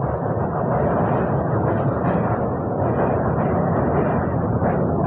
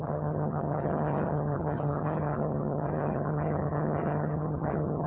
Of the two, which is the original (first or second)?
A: first